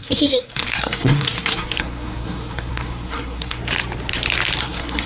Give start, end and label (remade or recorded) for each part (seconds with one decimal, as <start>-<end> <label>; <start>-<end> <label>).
0.0-3.6 remade; 3.6-4.6 recorded; 4.6-5.1 remade